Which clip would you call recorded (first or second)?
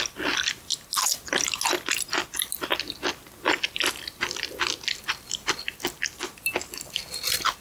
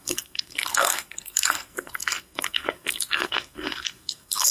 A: first